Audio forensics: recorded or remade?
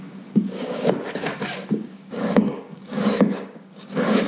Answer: remade